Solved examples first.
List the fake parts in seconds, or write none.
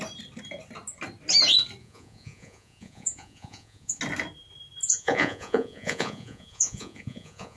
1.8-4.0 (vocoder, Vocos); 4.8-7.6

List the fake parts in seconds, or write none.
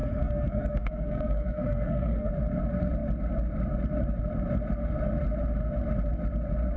0.0-2.3 (codec, SNAC)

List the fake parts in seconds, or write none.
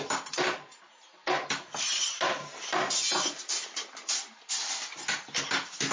none